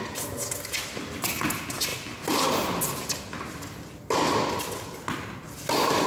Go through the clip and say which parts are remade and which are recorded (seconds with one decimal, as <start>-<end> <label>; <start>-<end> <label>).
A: 0.0-6.1 recorded